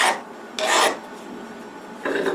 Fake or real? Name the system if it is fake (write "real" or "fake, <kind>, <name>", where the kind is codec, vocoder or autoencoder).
fake, vocoder, BigVGAN v2